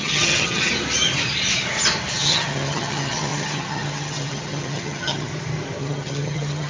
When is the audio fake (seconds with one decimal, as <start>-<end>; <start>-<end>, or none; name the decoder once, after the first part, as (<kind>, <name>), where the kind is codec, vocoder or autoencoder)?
0.0-0.7 (vocoder, HiFi-GAN); 2.1-5.3; 5.8-6.7